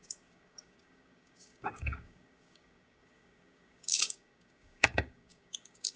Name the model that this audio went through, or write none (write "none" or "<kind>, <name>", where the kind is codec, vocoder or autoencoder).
codec, DAC